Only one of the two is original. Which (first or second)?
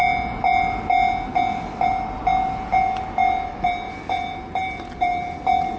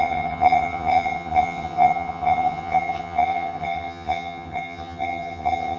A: first